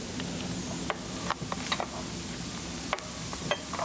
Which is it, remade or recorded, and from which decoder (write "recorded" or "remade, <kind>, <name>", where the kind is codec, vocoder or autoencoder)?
recorded